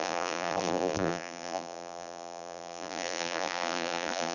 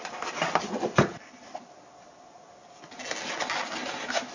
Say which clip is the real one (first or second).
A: second